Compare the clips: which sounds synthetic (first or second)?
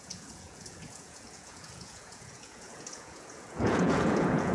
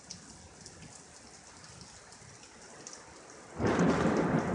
first